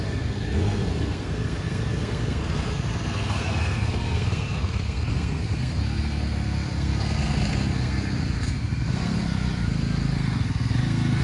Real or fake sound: fake